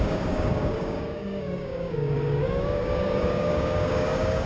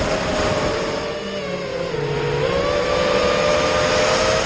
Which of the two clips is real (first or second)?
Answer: second